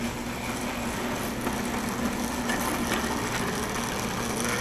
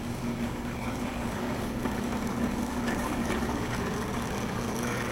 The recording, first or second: first